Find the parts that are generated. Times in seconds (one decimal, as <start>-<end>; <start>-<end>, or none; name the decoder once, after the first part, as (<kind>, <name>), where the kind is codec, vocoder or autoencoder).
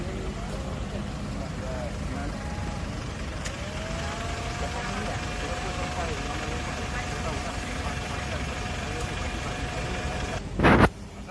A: 2.2-3.7 (vocoder, BigVGAN v2)